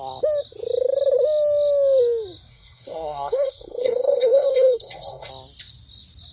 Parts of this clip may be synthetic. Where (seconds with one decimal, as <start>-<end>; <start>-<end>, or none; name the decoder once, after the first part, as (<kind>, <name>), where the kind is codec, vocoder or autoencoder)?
2.5-5.3 (codec, SNAC)